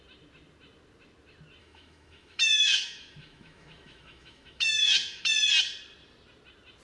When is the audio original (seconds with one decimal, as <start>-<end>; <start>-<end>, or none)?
0.0-1.6; 5.3-6.8